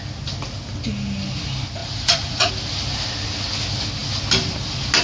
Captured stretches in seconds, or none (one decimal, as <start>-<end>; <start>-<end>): 0.0-1.8; 2.5-5.0